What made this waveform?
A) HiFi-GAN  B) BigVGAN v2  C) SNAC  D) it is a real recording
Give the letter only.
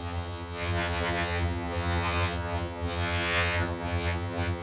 A